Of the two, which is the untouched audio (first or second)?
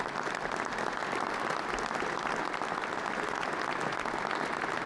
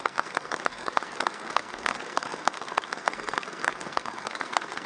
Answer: first